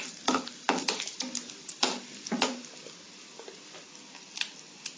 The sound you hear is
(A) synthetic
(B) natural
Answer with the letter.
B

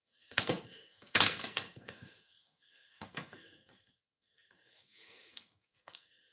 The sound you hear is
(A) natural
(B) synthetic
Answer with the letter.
B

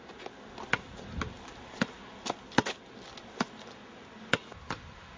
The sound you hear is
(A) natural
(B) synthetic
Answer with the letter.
A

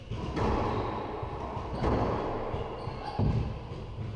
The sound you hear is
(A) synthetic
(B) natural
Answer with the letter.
B